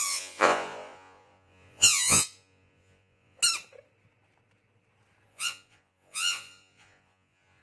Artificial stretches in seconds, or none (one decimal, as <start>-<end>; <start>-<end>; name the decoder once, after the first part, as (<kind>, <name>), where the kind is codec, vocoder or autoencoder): 0.0-3.4 (vocoder, Vocos); 5.3-7.6